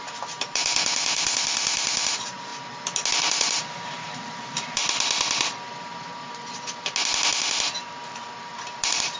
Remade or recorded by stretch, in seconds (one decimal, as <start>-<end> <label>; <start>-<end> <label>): 0.0-2.5 remade; 2.5-3.1 recorded; 3.1-4.8 remade; 4.8-8.5 recorded; 8.5-9.2 remade